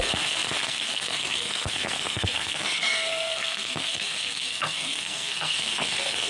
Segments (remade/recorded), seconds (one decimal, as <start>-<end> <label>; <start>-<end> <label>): 0.0-6.3 remade

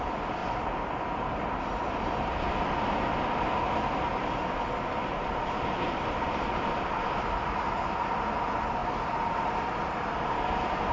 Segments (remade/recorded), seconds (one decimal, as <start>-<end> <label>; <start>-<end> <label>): 0.0-10.9 recorded

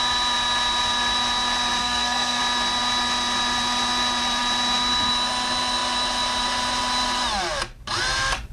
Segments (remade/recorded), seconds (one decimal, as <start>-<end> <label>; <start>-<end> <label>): 0.0-1.8 recorded; 1.8-2.4 remade; 2.4-8.5 recorded

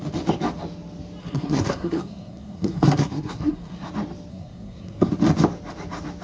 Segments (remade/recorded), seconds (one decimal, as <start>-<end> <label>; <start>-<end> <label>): 0.0-1.2 recorded; 1.2-3.9 remade; 3.9-4.3 recorded; 4.3-5.1 remade; 5.1-6.2 recorded

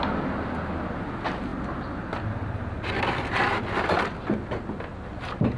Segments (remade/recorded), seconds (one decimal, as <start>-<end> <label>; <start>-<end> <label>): 0.0-5.6 recorded

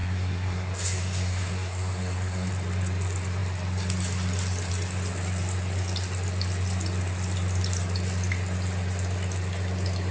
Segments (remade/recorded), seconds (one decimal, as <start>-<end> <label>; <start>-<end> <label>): 0.0-2.5 remade; 2.5-10.1 recorded

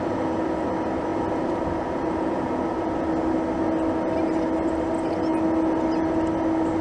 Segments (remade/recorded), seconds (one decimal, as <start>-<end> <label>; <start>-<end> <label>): 0.0-6.8 recorded

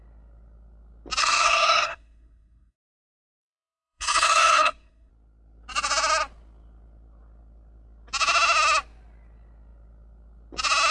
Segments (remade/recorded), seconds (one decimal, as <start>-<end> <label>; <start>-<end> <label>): 0.0-1.2 recorded; 1.2-5.1 remade; 5.1-10.9 recorded